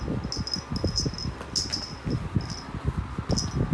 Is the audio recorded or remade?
recorded